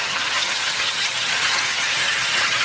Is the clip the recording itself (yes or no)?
no